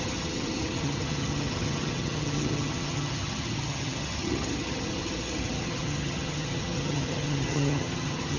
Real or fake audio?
fake